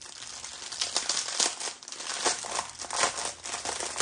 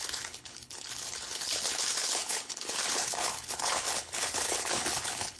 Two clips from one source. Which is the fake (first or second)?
second